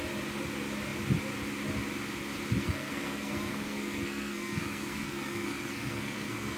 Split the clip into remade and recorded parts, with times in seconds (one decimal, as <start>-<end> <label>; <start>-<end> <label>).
0.0-2.6 recorded; 2.6-6.6 remade